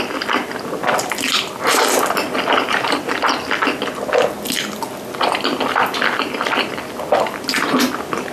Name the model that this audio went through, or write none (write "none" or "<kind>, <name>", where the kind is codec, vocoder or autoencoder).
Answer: none